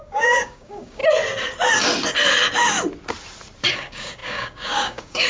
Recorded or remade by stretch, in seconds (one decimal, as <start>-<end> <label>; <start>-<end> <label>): 0.0-1.0 remade; 1.0-3.7 recorded; 3.7-5.3 remade